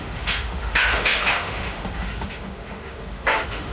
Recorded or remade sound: remade